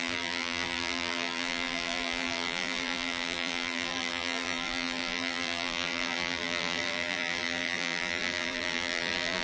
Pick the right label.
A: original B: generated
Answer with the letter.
B